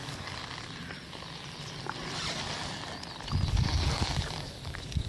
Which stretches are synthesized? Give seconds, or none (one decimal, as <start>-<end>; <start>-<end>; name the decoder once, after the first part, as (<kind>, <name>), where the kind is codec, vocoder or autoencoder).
0.0-0.4 (codec, DAC); 3.5-5.1